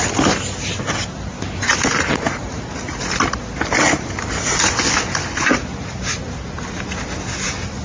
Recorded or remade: recorded